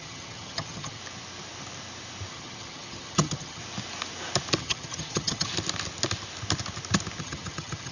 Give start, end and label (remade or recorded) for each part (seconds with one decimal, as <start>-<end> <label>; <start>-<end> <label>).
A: 0.0-1.0 remade; 1.0-2.3 recorded; 2.3-3.6 remade; 3.6-4.6 recorded; 4.6-5.5 remade; 5.5-7.2 recorded; 7.2-7.9 remade